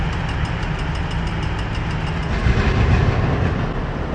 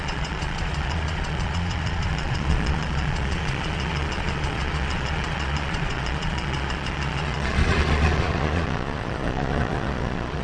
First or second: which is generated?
second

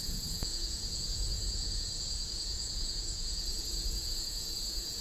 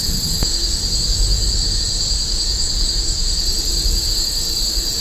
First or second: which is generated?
first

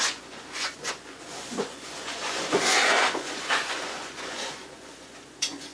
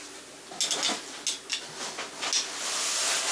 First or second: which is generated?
first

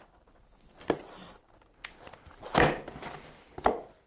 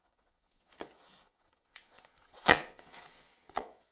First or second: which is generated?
second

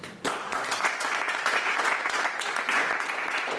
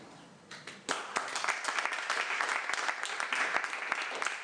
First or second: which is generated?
first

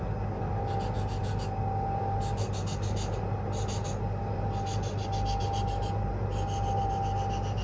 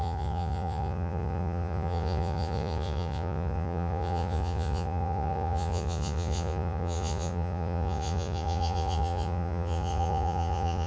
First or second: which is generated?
second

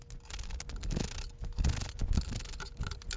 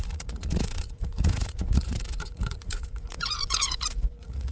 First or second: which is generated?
second